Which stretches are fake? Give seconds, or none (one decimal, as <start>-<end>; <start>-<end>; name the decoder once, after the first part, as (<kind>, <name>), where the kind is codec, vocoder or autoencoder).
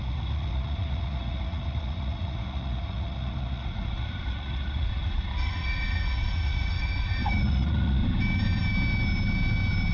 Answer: 0.0-8.0 (vocoder, Vocos)